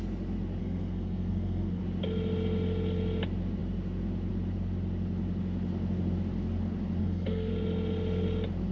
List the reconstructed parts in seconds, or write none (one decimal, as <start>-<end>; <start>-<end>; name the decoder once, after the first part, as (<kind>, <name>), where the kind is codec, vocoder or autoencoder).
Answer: 0.6-1.8 (codec, SNAC); 7.0-7.5